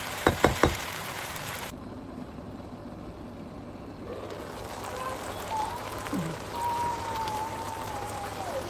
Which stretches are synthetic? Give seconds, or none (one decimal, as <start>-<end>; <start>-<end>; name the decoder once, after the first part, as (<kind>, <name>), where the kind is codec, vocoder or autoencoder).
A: 0.0-2.8 (vocoder, BigVGAN v2); 5.3-8.7